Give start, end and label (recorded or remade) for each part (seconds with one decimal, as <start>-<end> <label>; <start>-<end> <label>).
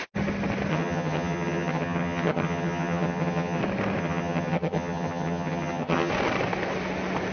0.0-0.7 recorded; 0.7-3.6 remade; 3.6-4.0 recorded; 4.0-6.1 remade; 6.1-7.3 recorded